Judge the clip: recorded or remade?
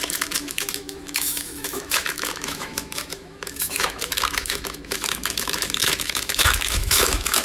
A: remade